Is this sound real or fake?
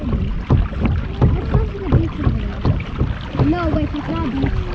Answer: real